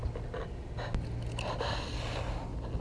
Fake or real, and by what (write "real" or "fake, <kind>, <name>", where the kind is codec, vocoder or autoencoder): real